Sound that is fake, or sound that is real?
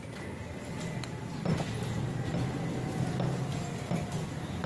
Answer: real